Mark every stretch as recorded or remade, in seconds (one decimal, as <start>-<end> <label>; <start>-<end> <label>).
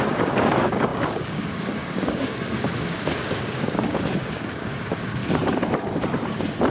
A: 0.0-5.2 remade; 5.2-6.7 recorded